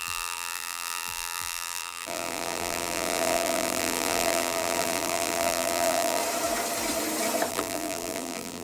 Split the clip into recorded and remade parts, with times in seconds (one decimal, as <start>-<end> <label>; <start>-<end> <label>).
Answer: 0.0-6.2 remade; 6.2-7.5 recorded; 7.5-8.6 remade